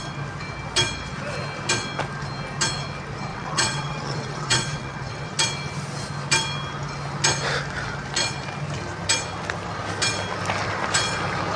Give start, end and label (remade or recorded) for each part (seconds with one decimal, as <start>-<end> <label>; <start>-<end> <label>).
0.0-3.3 recorded; 3.3-5.3 remade; 5.3-11.6 recorded